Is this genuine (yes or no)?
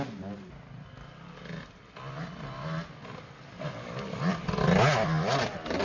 yes